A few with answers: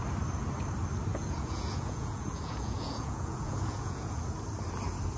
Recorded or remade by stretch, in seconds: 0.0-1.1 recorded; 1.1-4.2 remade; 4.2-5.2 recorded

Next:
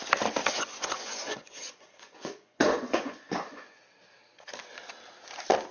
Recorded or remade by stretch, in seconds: 0.0-0.4 recorded; 0.4-3.8 remade; 3.8-5.7 recorded

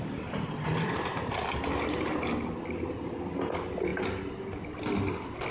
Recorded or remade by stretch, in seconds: 0.0-5.5 recorded

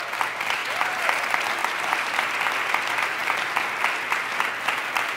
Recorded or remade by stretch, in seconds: 0.0-0.6 recorded; 0.6-1.2 remade; 1.2-1.6 recorded; 1.6-2.1 remade; 2.1-5.2 recorded

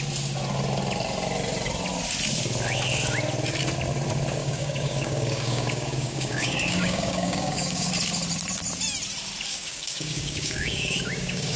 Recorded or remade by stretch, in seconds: 0.0-4.4 recorded; 4.4-7.9 remade; 7.9-9.5 recorded; 9.5-11.6 remade

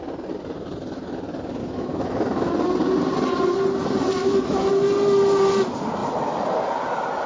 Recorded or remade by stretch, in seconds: 0.0-1.6 recorded; 1.6-2.5 remade; 2.5-4.2 recorded; 4.2-4.7 remade; 4.7-7.3 recorded

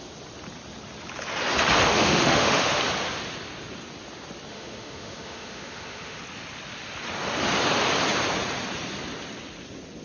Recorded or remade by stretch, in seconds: 0.0-1.9 recorded; 1.9-2.8 remade; 2.8-4.5 recorded; 4.5-6.2 remade; 6.2-10.0 recorded

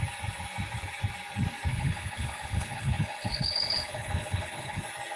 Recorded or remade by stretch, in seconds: 0.0-1.7 recorded; 1.7-4.8 remade; 4.8-5.2 recorded